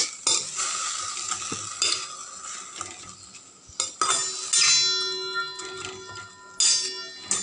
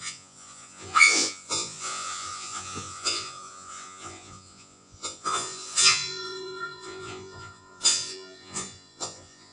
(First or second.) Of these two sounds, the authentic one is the first